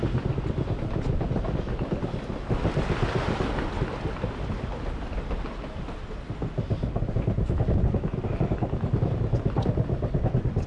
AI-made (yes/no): no